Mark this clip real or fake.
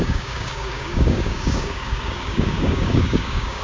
fake